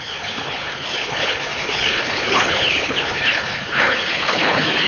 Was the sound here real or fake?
fake